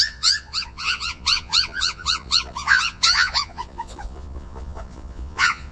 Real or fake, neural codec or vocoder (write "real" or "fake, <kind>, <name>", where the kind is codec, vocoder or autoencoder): fake, vocoder, Vocos